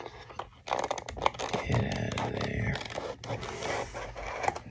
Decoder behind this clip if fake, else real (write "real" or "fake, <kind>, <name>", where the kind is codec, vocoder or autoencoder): real